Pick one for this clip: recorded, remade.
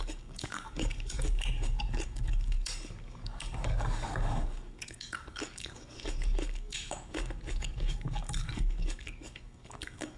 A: remade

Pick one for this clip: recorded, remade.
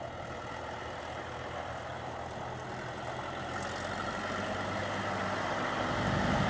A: recorded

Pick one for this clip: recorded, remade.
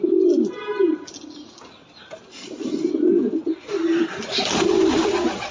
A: recorded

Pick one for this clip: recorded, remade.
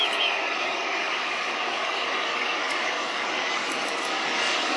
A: remade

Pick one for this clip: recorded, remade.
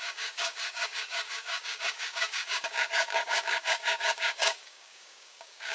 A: remade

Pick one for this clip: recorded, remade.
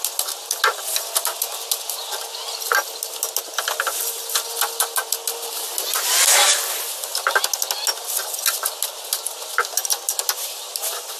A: recorded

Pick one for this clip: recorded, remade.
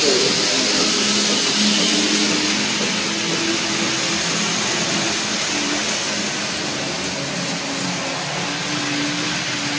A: recorded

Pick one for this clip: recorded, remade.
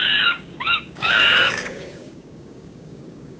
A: remade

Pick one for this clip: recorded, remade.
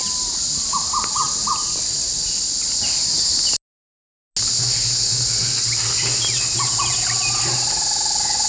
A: recorded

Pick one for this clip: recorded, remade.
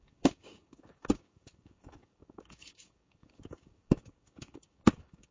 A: remade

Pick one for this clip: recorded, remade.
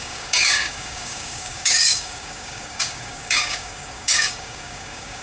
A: remade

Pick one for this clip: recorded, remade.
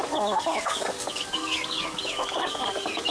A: remade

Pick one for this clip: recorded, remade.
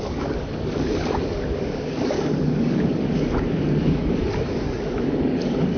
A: remade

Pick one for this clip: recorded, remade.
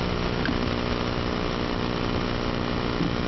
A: recorded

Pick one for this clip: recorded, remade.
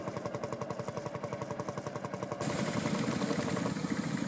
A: recorded